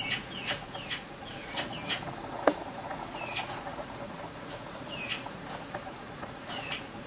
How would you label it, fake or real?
fake